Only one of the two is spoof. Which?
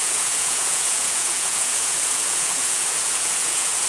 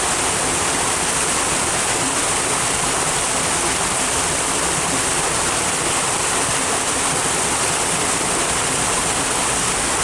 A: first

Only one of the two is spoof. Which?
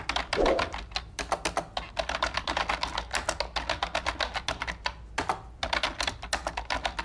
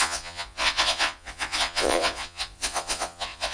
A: second